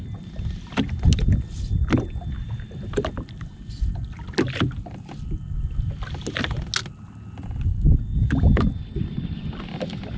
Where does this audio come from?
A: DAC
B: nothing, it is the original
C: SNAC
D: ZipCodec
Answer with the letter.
B